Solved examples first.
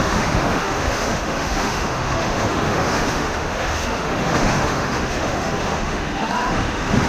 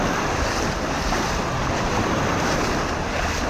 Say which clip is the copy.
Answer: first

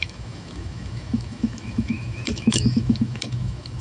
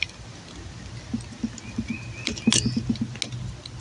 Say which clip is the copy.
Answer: first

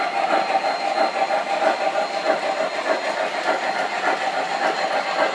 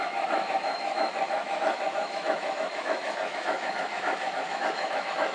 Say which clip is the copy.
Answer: second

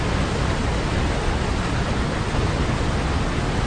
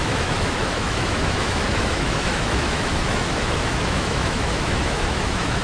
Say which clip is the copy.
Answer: second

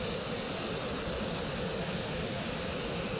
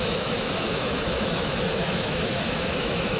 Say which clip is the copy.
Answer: second